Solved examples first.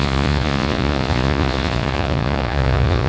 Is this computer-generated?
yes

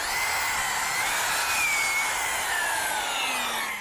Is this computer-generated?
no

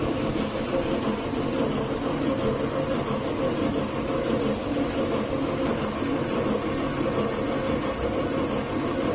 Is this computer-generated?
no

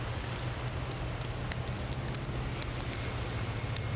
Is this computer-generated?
no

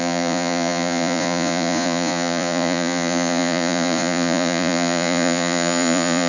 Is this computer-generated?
yes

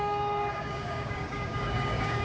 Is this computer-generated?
yes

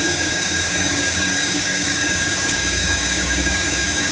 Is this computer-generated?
yes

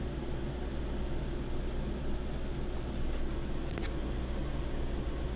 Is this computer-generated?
no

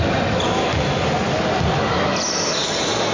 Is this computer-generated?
no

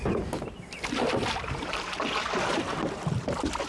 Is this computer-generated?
no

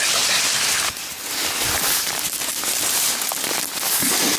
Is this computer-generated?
no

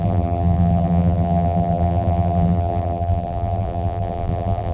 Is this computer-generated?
yes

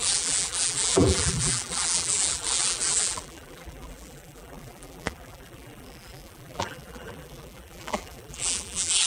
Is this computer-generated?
yes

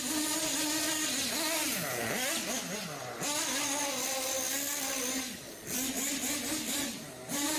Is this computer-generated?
no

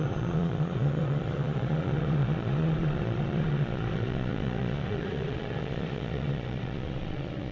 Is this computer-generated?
yes